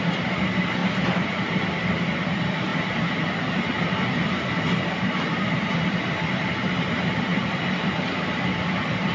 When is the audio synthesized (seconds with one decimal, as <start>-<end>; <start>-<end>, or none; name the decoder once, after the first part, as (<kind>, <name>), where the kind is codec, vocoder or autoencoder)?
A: 0.8-2.1 (vocoder, BigVGAN v2); 7.3-9.1